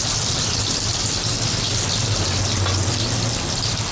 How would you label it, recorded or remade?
recorded